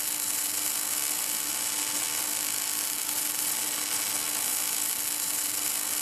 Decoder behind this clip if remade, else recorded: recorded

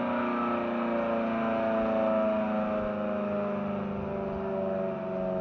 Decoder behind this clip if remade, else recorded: recorded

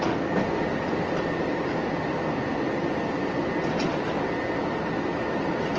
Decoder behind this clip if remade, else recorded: recorded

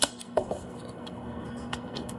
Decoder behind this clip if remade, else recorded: remade, codec, SNAC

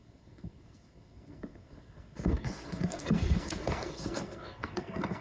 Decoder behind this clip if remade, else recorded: remade, codec, SNAC